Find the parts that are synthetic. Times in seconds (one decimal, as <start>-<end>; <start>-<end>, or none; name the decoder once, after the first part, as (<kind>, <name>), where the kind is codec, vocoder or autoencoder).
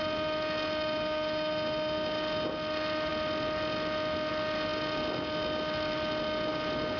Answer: none